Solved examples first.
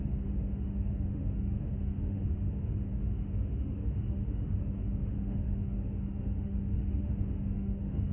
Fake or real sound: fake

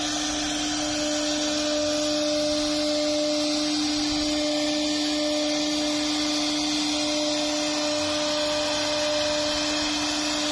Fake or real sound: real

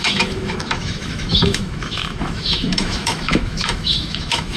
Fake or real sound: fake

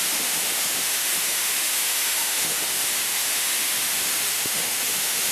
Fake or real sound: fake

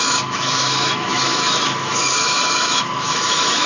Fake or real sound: fake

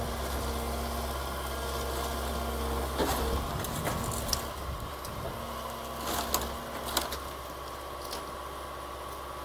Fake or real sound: real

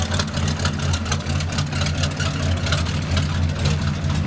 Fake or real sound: real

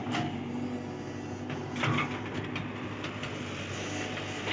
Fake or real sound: real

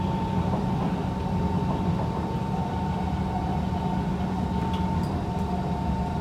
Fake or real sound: real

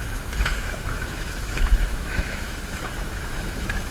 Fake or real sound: fake